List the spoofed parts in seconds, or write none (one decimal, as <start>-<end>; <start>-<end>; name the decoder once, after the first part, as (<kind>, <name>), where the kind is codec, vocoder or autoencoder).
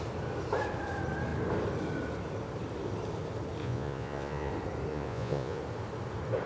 3.6-4.5 (vocoder, Vocos); 4.9-5.6